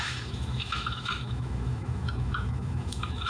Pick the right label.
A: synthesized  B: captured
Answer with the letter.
A